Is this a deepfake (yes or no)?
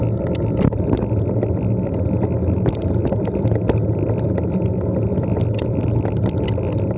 no